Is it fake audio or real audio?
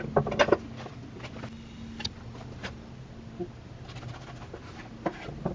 real